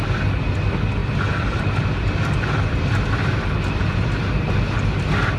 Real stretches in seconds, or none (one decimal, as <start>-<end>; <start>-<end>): 0.0-5.4